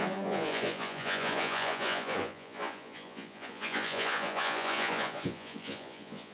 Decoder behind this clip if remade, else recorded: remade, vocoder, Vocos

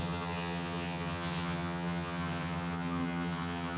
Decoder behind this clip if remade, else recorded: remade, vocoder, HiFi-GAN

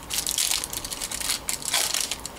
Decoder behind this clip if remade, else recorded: recorded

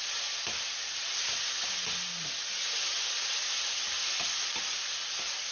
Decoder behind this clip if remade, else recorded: recorded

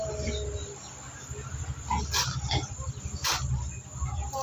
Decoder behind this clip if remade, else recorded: recorded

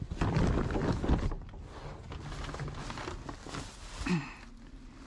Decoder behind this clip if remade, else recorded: recorded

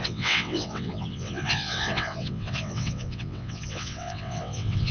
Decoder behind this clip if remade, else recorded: remade, vocoder, WaveNeXt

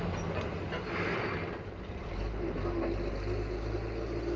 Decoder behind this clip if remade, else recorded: recorded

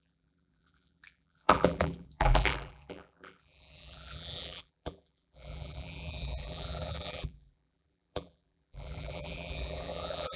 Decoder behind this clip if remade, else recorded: remade, vocoder, BigVGAN v2